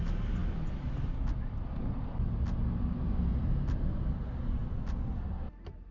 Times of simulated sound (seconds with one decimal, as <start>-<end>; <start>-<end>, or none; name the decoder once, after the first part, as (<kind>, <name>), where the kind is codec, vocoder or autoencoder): none

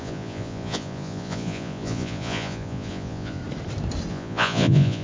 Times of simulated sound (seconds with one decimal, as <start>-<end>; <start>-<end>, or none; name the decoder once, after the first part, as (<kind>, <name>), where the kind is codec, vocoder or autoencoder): 0.0-3.4 (vocoder, Vocos); 4.1-5.0

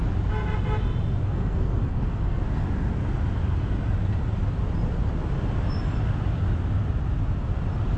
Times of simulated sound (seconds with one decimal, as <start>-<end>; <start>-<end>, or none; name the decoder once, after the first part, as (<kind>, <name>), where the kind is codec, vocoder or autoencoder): 1.2-2.4 (codec, SNAC)